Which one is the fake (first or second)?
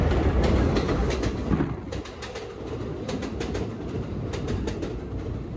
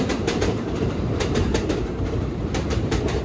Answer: second